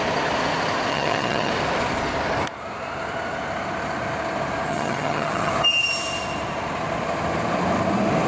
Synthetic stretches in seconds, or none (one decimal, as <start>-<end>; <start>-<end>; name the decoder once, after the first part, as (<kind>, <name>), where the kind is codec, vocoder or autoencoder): 0.9-1.5 (vocoder, HiFi-GAN); 4.7-5.5